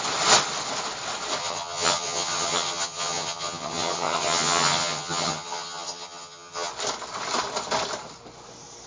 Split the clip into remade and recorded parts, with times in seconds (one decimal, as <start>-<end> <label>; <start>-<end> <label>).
0.0-1.4 recorded; 1.4-6.7 remade; 6.7-8.9 recorded